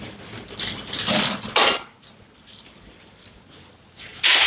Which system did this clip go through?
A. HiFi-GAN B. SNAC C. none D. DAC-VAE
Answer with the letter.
C